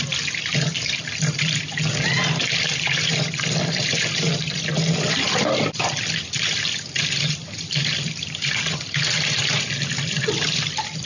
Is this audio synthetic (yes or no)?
no